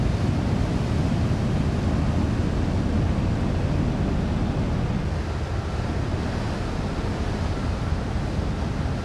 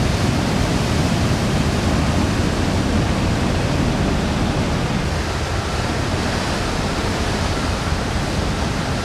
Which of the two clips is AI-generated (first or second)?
second